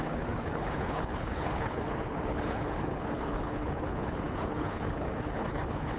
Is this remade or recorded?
remade